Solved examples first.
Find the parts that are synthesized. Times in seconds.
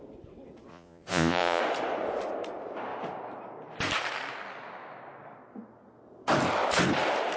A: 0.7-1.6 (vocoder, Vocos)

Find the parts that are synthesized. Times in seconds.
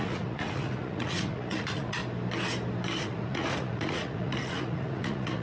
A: 0.0-2.0 (vocoder, Vocos); 3.0-5.4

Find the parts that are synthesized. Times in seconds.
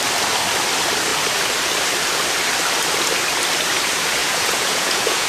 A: 4.2-5.3 (vocoder, Vocos)